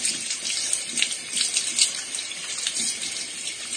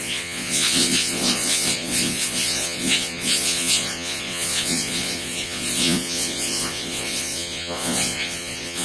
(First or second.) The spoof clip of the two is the second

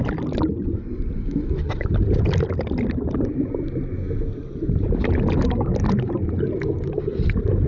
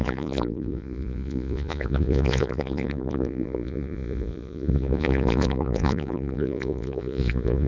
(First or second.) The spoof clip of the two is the second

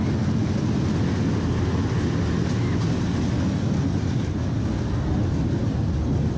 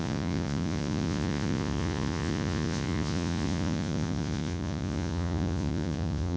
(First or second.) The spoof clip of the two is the second